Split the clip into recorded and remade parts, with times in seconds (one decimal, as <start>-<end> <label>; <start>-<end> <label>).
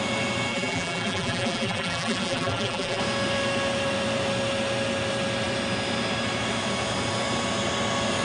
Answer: 0.0-0.5 recorded; 0.5-3.0 remade; 3.0-8.2 recorded